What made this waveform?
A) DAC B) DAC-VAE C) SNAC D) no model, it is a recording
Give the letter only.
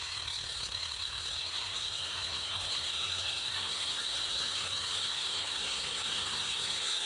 C